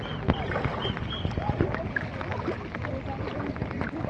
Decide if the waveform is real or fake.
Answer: real